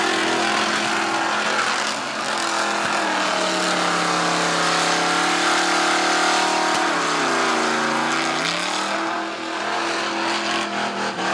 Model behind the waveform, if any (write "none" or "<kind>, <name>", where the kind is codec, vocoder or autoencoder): none